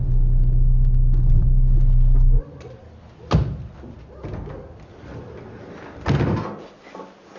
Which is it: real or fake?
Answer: real